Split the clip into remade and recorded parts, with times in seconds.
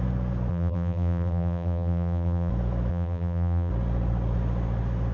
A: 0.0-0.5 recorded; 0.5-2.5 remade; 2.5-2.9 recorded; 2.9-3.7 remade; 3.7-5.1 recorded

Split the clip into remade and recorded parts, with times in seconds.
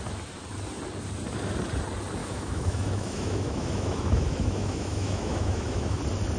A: 0.0-2.2 recorded; 2.2-6.0 remade; 6.0-6.4 recorded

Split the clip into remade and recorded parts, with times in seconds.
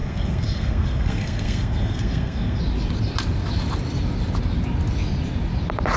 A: 0.0-2.6 remade; 2.6-6.0 recorded